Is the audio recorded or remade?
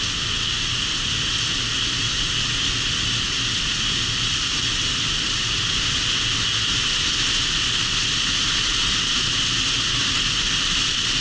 recorded